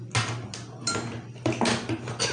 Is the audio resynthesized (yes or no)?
no